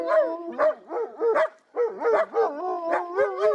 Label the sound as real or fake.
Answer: real